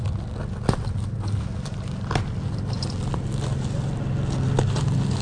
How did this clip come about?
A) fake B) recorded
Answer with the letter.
B